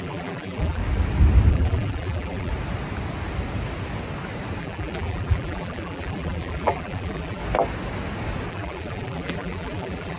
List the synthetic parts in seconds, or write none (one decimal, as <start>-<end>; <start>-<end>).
0.0-0.8; 1.5-2.5; 4.6-7.4; 8.5-10.2